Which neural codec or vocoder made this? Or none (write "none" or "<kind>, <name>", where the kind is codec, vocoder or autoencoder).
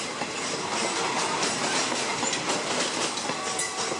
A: none